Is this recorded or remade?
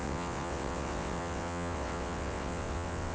remade